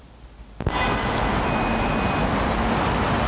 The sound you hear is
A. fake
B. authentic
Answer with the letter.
B